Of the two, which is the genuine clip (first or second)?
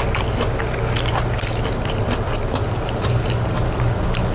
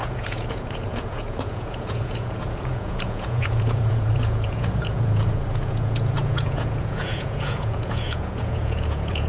first